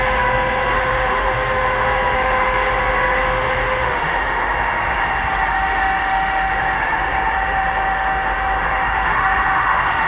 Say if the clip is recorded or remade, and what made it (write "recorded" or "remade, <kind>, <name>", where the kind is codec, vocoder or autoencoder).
remade, autoencoder, DAC-VAE